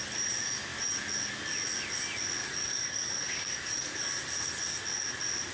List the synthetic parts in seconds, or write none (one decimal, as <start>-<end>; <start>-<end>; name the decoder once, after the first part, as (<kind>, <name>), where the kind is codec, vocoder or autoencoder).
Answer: 2.4-4.1 (codec, DAC)